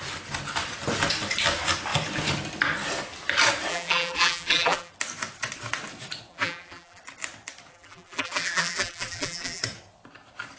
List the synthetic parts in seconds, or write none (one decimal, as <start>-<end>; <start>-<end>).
3.7-4.9; 6.3-7.0; 7.7-9.6